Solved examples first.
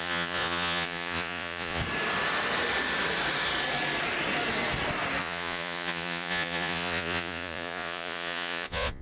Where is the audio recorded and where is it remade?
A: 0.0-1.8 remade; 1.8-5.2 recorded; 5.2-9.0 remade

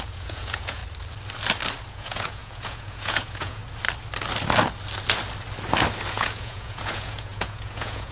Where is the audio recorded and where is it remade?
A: 0.0-0.8 remade; 0.8-1.9 recorded; 1.9-3.6 remade; 3.6-6.1 recorded; 6.1-8.1 remade

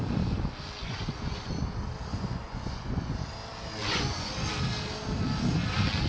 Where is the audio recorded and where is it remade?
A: 0.0-0.8 recorded; 0.8-1.5 remade; 1.5-2.1 recorded; 2.1-3.1 remade; 3.1-3.8 recorded; 3.8-4.3 remade; 4.3-6.1 recorded

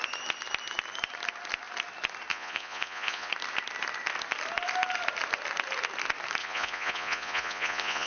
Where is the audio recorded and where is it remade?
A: 0.0-2.3 recorded; 2.3-3.3 remade; 3.3-6.4 recorded; 6.4-8.1 remade

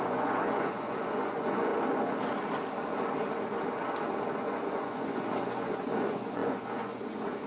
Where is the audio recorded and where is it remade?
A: 0.0-1.7 remade; 1.7-4.4 recorded; 4.4-7.5 remade

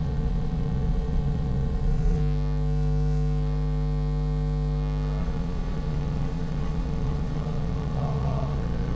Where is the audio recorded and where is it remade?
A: 0.0-2.2 remade; 2.2-5.2 recorded; 5.2-9.0 remade